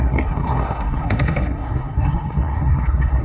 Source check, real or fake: fake